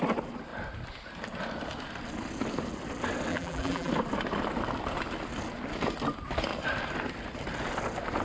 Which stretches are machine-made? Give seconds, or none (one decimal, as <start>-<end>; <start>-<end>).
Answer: 3.3-3.9

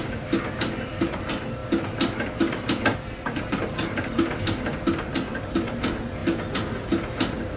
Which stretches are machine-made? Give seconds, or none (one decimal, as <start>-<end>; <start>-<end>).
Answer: none